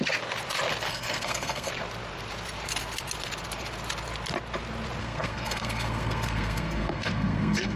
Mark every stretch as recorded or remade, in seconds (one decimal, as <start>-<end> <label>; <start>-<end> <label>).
0.0-0.9 recorded; 0.9-1.7 remade; 1.7-5.0 recorded; 5.0-7.8 remade